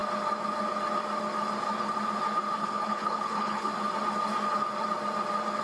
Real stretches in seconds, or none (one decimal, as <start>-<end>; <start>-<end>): 0.0-2.6; 3.7-5.6